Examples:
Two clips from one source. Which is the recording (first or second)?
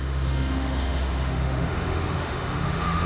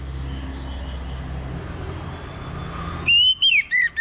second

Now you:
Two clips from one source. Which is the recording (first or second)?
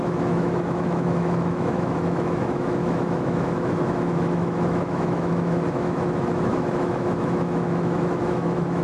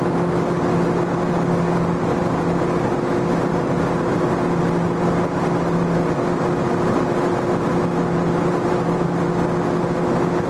second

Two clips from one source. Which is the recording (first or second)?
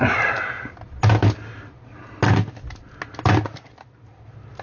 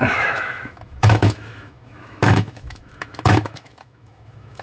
first